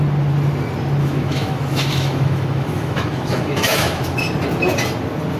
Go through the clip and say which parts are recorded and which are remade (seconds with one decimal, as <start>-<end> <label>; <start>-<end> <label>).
0.0-1.0 recorded; 1.0-4.2 remade; 4.2-5.4 recorded